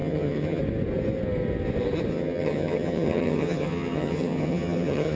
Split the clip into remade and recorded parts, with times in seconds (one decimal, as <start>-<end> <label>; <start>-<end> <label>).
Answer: 0.0-0.6 remade; 0.6-2.1 recorded; 2.1-5.2 remade